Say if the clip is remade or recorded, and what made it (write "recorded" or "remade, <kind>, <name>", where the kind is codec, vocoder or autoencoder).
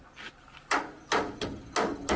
recorded